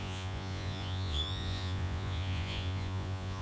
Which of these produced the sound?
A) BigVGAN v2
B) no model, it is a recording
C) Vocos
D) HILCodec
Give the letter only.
C